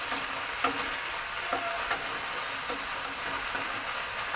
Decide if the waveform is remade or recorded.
recorded